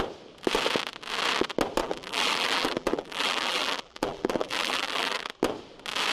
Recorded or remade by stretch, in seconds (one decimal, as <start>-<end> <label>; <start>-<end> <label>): 0.0-1.8 recorded; 1.8-5.3 remade; 5.3-6.1 recorded